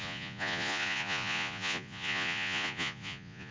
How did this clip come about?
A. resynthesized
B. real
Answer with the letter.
A